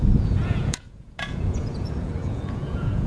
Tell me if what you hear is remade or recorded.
remade